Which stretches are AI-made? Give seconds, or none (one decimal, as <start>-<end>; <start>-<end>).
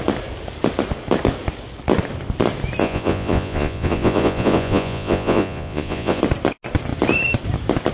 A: 2.8-6.2